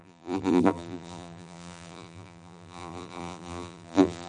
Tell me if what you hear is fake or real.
fake